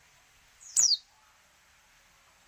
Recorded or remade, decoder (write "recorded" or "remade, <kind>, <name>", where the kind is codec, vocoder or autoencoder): remade, vocoder, BigVGAN v2